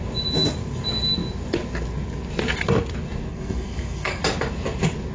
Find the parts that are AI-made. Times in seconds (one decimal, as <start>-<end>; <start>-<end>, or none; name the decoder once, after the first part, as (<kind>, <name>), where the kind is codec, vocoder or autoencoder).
3.3-4.2 (codec, SNAC)